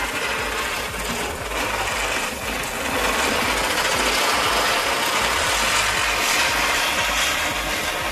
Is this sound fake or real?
real